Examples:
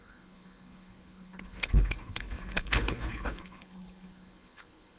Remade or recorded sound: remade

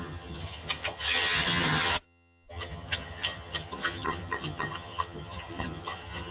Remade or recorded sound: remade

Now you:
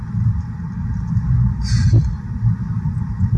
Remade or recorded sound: recorded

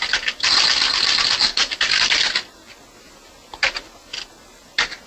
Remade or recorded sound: recorded